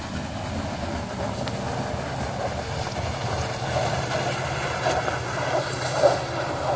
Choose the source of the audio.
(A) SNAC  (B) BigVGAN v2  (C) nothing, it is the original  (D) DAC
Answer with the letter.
C